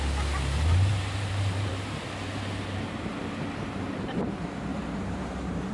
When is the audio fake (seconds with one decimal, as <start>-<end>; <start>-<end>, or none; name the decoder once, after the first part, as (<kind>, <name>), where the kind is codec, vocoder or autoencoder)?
0.9-1.7 (vocoder, BigVGAN v2); 4.7-5.7